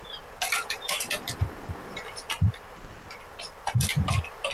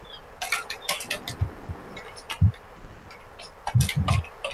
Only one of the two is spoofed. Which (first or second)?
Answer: first